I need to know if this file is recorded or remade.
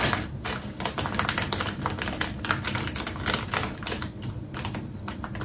recorded